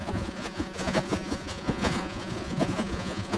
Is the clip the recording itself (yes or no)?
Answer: no